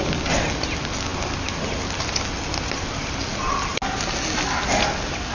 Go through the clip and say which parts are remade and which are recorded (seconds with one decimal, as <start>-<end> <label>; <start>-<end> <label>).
0.0-5.3 recorded